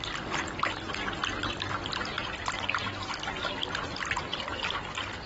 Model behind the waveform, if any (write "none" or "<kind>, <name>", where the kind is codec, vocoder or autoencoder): none